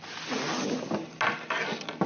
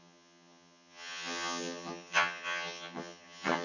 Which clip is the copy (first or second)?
second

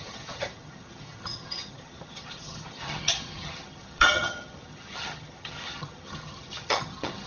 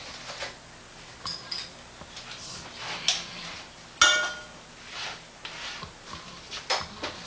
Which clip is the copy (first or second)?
first